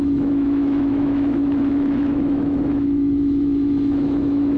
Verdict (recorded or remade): remade